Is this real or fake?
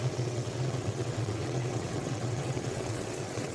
fake